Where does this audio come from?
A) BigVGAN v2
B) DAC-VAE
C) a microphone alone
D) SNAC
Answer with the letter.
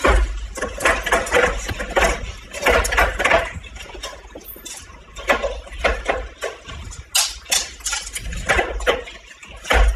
C